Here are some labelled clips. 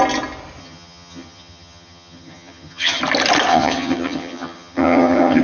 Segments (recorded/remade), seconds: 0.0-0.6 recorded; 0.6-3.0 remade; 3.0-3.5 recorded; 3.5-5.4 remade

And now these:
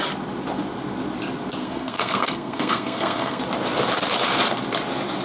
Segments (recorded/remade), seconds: 0.0-1.6 recorded; 1.6-3.4 remade; 3.4-5.2 recorded